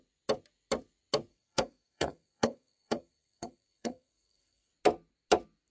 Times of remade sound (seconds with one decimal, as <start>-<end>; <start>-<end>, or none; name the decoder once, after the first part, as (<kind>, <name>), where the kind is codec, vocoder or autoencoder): 1.3-4.7 (codec, SNAC)